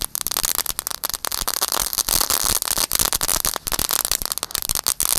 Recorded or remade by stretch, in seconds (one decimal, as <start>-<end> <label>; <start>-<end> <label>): 0.0-0.9 recorded; 0.9-1.9 remade; 1.9-5.2 recorded